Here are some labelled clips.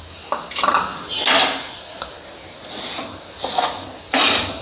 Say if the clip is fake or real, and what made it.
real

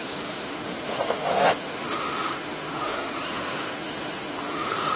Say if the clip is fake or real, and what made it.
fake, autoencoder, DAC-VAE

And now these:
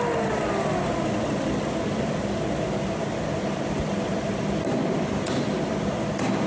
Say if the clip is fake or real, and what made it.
real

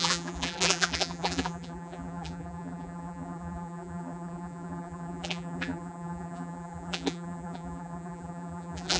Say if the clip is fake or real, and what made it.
fake, vocoder, BigVGAN v2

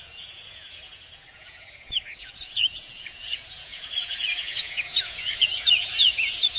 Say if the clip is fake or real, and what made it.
fake, vocoder, Vocos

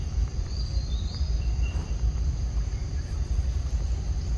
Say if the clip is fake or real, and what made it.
fake, vocoder, BigVGAN v2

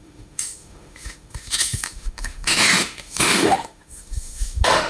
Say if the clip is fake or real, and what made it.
fake, autoencoder, DAC-VAE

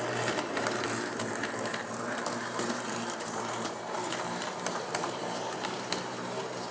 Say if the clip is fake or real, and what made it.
fake, vocoder, BigVGAN v2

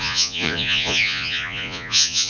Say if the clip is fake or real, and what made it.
fake, vocoder, Vocos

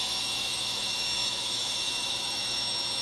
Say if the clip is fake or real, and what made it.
fake, autoencoder, DAC-VAE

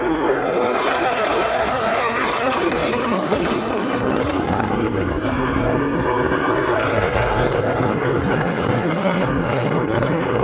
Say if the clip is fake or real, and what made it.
fake, codec, SNAC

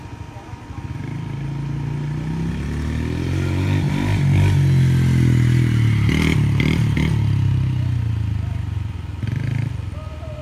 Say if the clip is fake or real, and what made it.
real